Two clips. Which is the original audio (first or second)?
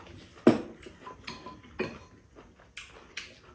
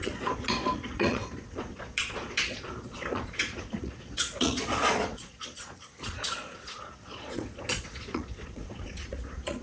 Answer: first